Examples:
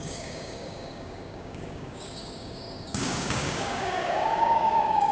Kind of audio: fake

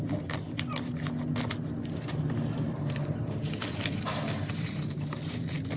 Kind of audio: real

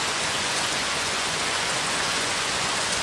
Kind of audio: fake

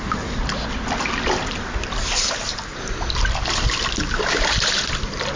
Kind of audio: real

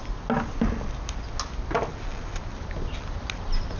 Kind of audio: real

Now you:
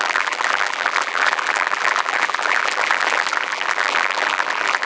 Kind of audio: fake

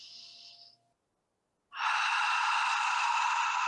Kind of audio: real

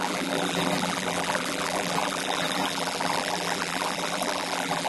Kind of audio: fake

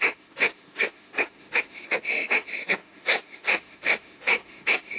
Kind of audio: fake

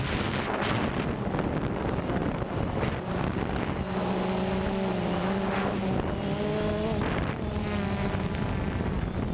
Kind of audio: real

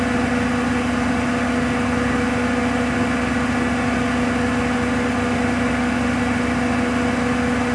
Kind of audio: real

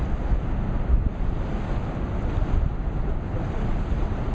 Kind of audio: real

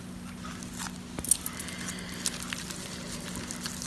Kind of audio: real